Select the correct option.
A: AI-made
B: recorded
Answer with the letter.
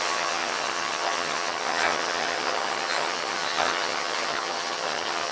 A